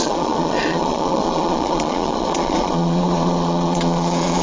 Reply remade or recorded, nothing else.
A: remade